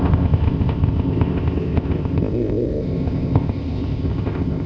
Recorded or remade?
remade